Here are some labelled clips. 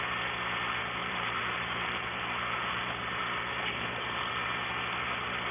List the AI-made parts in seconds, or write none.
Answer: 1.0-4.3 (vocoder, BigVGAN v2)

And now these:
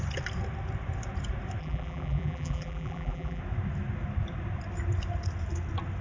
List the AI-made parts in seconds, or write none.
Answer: 1.6-3.4 (vocoder, BigVGAN v2)

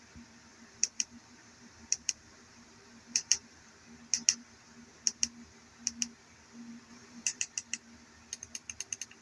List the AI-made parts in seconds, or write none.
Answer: 0.5-3.7 (vocoder, BigVGAN v2); 6.9-7.4

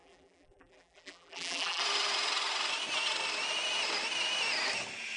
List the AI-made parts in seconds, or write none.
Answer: 0.0-1.8 (vocoder, BigVGAN v2)

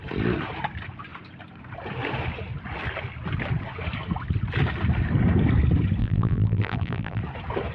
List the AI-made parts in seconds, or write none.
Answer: 6.0-7.2 (vocoder, BigVGAN v2)

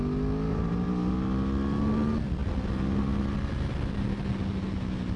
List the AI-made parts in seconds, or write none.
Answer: 0.5-1.1 (vocoder, BigVGAN v2)

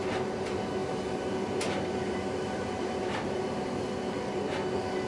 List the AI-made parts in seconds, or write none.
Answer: 0.8-3.9 (vocoder, BigVGAN v2)

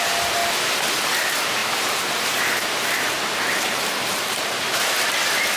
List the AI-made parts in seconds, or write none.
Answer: 1.6-4.8 (vocoder, BigVGAN v2)